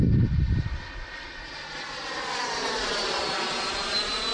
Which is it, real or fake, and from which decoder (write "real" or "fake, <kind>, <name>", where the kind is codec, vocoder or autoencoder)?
real